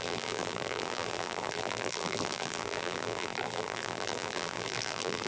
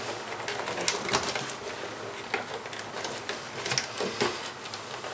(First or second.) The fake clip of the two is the first